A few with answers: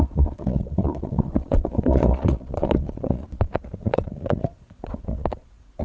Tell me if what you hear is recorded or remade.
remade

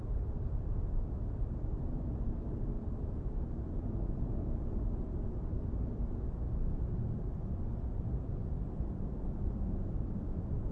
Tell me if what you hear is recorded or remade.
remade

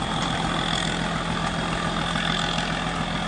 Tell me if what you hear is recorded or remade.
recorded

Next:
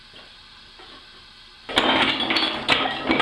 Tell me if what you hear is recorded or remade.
recorded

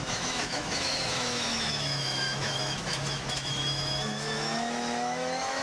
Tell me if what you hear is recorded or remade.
remade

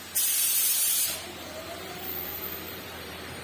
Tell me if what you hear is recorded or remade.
remade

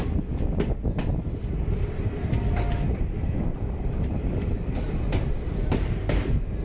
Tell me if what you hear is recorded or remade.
recorded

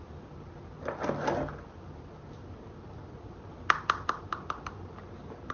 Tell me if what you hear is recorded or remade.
recorded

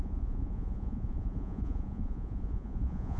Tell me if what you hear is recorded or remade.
remade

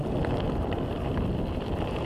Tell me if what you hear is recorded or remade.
recorded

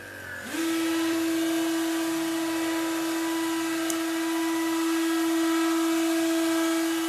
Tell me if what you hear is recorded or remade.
recorded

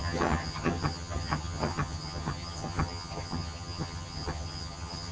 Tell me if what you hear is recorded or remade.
remade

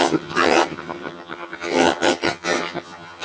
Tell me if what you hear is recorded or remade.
remade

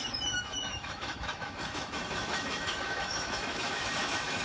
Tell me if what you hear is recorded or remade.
remade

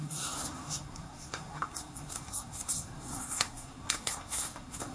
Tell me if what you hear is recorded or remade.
remade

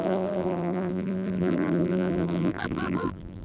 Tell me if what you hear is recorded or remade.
remade